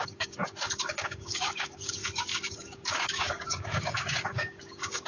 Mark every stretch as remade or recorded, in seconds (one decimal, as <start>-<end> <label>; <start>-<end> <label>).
0.0-5.1 remade